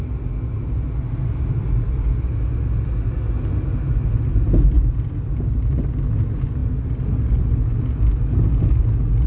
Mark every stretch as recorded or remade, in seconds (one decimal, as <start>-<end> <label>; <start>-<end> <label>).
0.0-9.3 recorded